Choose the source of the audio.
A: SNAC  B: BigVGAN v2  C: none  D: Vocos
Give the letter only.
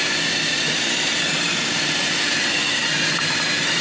B